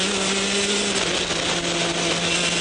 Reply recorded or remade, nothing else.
recorded